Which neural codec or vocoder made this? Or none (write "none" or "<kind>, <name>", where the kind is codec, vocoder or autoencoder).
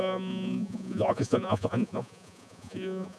vocoder, Vocos